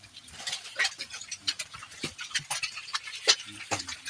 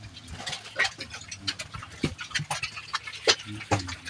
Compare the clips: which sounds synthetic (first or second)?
first